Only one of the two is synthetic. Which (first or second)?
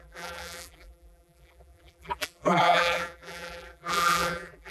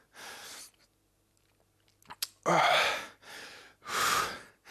first